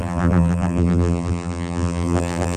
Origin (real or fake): fake